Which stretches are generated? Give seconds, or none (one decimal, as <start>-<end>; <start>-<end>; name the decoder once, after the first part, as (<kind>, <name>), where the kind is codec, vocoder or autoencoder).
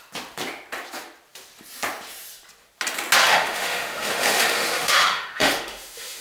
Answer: 3.2-6.2 (autoencoder, DAC-VAE)